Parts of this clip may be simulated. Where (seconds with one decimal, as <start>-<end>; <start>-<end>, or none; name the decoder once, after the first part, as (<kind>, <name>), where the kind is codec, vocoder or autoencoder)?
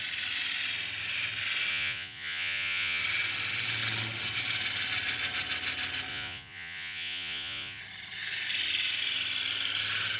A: 1.7-3.0 (vocoder, Vocos); 6.1-7.8